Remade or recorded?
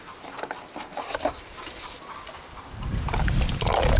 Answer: recorded